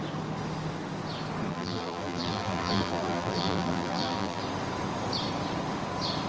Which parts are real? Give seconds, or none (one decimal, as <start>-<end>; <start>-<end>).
0.0-1.5; 4.4-6.3

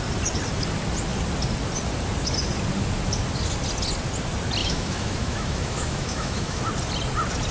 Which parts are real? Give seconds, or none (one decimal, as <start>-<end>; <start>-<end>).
0.0-4.6; 6.6-7.5

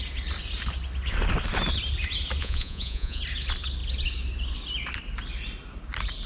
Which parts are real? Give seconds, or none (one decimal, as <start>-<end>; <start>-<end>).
0.0-2.4; 3.2-6.3

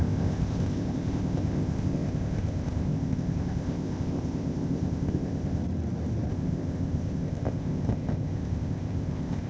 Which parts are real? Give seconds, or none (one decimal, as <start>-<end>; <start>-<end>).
5.6-6.3

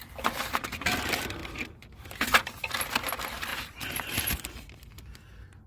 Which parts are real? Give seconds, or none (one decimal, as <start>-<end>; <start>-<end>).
0.0-3.5; 4.5-5.7

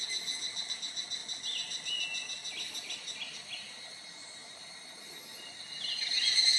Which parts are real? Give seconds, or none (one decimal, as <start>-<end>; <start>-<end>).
0.0-6.6

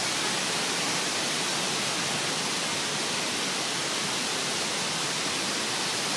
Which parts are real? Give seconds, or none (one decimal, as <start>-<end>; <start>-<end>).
0.0-6.2